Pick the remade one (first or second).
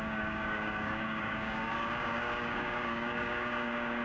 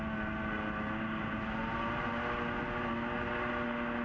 first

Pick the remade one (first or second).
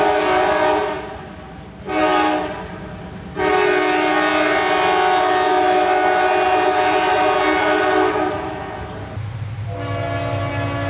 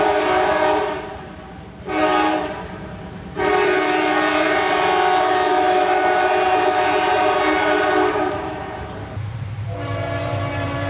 second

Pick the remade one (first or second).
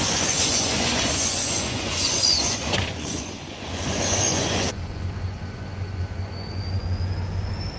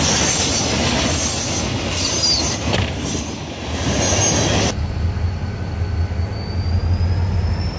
first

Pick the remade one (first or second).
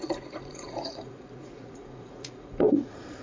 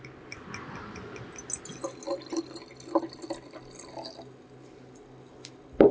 first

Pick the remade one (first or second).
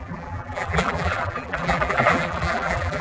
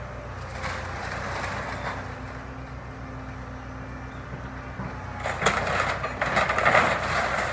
first